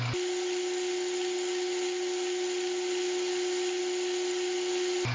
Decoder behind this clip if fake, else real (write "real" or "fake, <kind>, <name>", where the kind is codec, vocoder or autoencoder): real